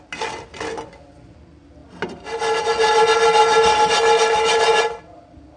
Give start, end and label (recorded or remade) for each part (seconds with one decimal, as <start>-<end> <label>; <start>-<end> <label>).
0.0-5.6 recorded